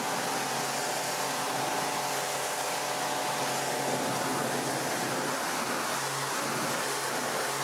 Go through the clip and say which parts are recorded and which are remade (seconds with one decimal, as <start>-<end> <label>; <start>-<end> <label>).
0.0-7.6 recorded